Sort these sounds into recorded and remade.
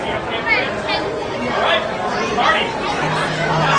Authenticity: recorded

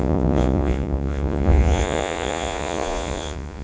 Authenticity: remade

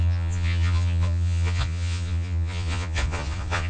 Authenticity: remade